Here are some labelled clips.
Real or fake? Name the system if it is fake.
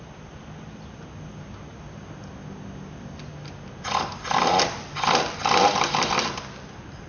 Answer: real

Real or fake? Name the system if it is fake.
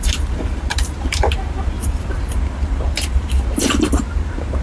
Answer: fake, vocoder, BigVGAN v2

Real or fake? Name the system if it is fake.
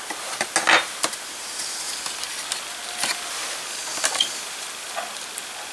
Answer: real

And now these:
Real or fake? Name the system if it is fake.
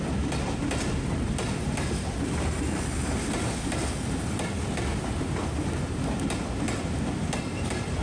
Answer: real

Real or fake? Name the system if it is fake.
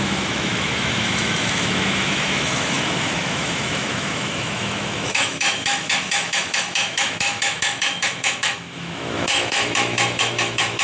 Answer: fake, autoencoder, DAC-VAE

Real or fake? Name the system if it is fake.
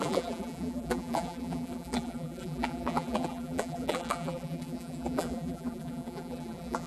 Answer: fake, vocoder, BigVGAN v2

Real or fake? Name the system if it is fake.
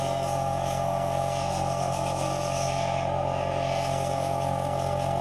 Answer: fake, codec, SNAC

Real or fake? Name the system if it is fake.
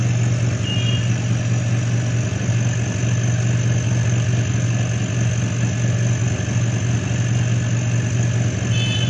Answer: real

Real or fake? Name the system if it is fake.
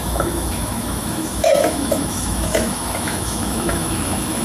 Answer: fake, autoencoder, DAC-VAE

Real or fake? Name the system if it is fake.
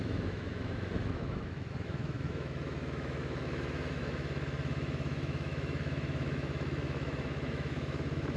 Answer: fake, autoencoder, DAC-VAE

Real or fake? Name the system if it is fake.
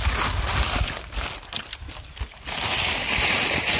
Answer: real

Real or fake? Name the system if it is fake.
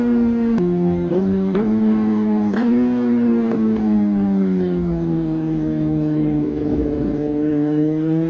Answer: fake, codec, DAC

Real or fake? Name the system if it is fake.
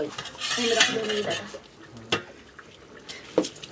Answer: real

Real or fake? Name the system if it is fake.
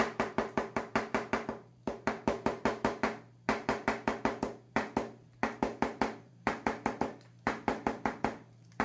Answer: fake, vocoder, BigVGAN v2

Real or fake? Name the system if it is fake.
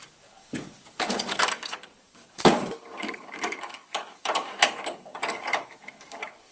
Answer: fake, codec, DAC